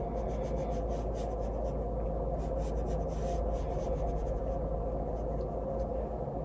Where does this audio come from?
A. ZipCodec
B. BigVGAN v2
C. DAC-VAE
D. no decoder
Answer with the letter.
D